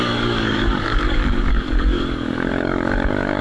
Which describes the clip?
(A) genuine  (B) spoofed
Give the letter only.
B